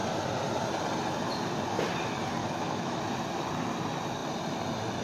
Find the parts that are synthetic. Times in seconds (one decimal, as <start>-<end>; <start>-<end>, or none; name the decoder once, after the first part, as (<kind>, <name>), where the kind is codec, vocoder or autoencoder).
2.4-3.0 (autoencoder, DAC-VAE)